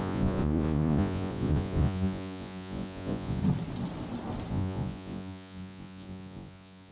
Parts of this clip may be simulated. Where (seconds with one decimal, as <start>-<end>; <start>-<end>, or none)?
0.0-3.4; 4.5-6.9